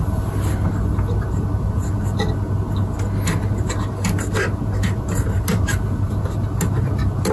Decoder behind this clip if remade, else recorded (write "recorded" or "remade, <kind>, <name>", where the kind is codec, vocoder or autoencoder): recorded